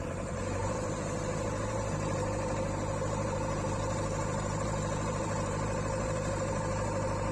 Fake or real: fake